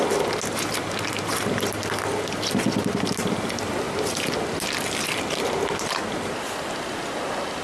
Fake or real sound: real